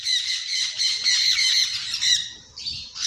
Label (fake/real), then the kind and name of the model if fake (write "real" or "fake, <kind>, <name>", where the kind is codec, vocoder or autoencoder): fake, vocoder, BigVGAN v2